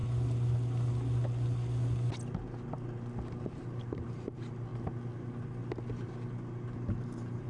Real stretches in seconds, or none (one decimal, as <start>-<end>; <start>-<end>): 0.0-3.3; 4.7-7.0